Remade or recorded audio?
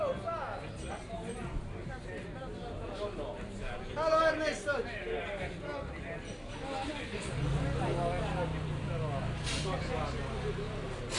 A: recorded